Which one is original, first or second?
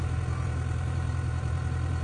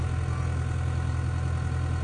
second